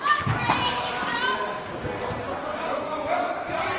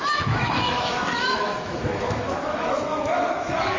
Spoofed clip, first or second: second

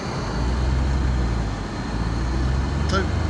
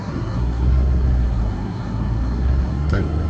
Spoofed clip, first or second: second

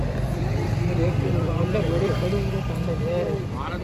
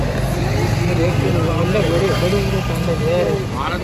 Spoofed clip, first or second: first